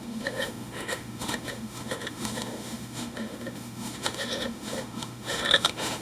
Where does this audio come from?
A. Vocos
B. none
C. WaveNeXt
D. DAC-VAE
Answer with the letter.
D